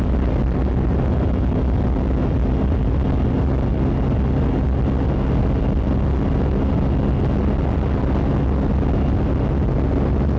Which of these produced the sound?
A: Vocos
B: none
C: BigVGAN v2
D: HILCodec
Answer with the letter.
B